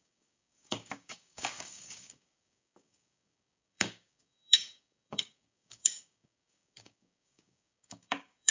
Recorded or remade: remade